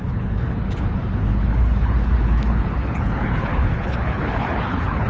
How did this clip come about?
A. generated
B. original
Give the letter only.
A